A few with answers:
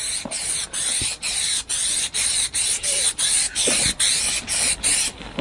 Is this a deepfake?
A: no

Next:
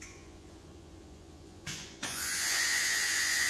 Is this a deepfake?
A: yes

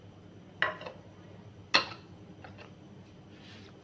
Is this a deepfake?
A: no